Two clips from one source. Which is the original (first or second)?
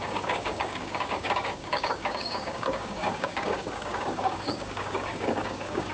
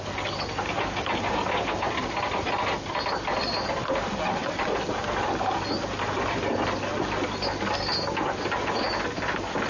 second